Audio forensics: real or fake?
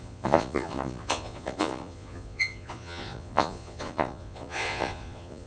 fake